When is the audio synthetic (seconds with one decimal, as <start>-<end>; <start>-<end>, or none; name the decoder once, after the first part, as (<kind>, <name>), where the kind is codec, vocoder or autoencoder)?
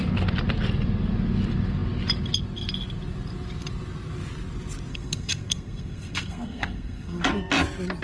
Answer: 4.9-7.2 (codec, SNAC)